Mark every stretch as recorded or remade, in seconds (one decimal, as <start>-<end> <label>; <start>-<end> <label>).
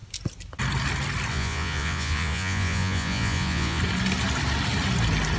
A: 0.0-1.3 recorded; 1.3-3.8 remade; 3.8-5.4 recorded